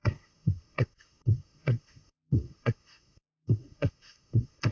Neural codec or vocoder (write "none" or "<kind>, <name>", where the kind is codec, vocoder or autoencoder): codec, SNAC